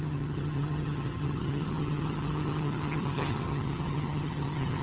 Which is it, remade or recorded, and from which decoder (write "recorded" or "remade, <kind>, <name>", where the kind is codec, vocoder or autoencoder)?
remade, vocoder, HiFi-GAN